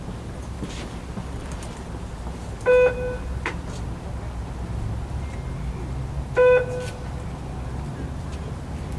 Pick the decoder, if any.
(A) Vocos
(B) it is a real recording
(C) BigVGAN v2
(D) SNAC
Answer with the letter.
B